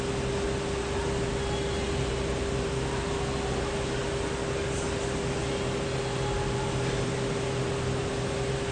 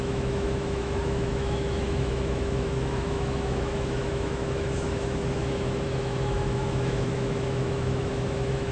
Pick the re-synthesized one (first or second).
second